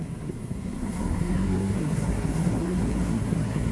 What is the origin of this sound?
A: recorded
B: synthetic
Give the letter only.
B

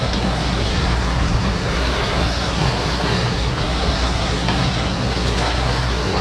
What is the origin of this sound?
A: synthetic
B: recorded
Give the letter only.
A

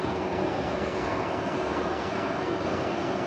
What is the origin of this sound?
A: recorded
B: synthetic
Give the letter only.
B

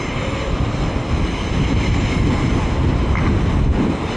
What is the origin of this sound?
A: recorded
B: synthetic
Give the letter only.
A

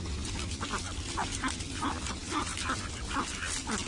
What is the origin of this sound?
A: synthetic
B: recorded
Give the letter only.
B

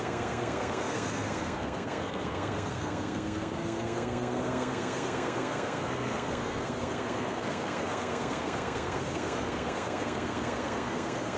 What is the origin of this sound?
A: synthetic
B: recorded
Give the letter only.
A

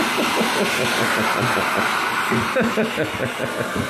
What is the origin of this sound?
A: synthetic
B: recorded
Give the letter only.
B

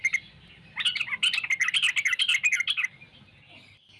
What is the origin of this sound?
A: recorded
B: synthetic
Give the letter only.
A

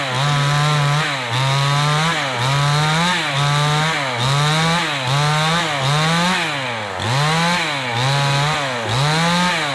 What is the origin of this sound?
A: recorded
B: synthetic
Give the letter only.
A